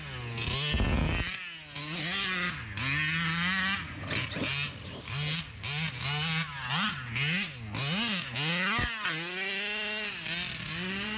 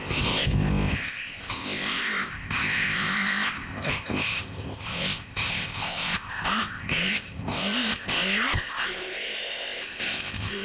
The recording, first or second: first